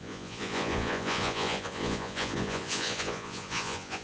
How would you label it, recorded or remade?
remade